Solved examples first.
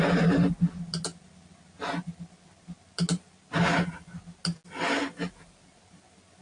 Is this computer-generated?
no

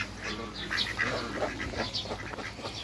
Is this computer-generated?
no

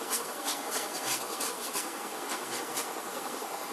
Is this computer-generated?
yes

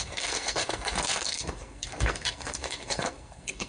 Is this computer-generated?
yes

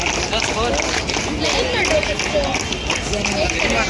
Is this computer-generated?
no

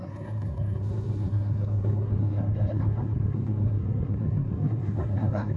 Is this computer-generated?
yes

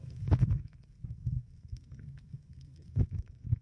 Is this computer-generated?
yes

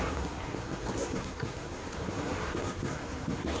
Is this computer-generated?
yes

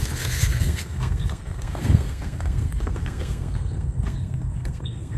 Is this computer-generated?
yes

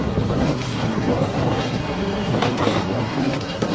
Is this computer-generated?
yes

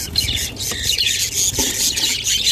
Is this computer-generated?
no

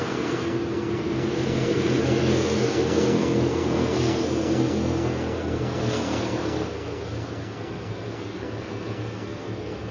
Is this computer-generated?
yes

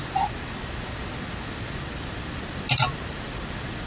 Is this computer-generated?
no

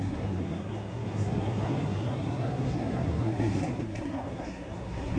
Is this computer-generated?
yes